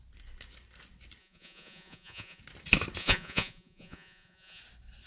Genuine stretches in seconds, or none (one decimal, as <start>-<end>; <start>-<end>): 0.0-1.2; 2.4-3.0; 4.6-5.1